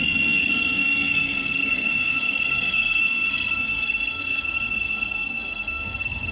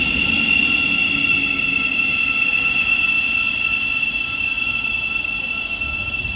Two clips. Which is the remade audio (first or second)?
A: first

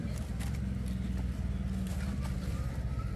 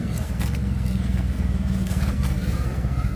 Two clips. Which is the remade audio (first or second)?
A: second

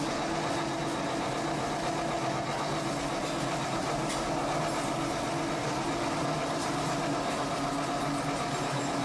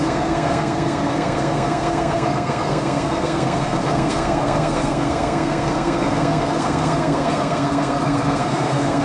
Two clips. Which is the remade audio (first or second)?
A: second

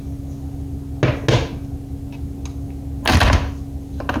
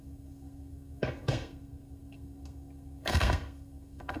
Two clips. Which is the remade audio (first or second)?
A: second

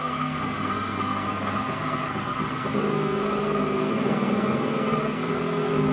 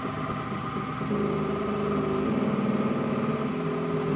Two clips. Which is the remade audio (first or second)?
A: first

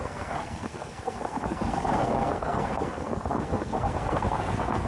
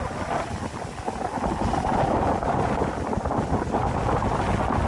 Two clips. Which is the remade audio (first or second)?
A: first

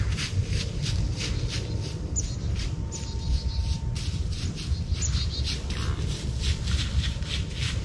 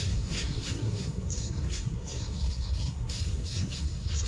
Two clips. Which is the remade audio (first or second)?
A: second